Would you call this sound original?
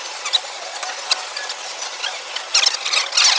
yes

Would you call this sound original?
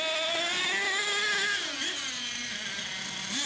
yes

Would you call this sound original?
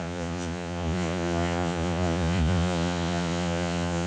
no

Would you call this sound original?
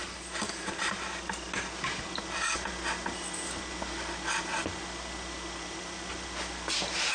yes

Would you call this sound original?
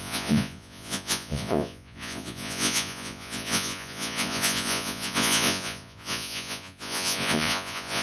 no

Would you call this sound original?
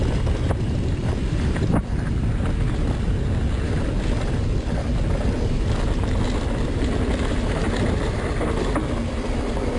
yes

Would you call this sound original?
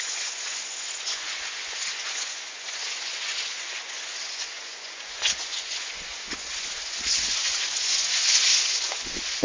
no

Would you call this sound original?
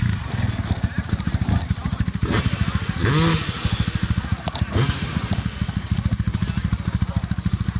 yes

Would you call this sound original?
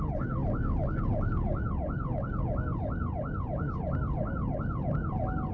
yes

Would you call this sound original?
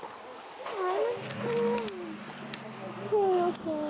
yes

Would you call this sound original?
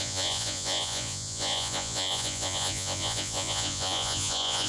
no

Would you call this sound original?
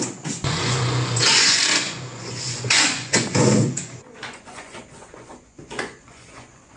no